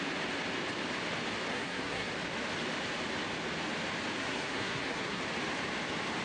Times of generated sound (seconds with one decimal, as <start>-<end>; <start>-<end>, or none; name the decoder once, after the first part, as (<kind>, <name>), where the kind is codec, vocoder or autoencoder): 1.5-2.1 (codec, SNAC); 4.2-5.2